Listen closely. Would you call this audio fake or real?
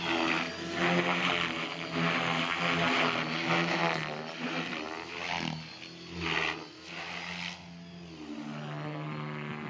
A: real